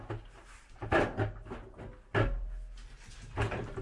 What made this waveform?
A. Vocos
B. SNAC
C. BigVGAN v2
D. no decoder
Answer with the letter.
D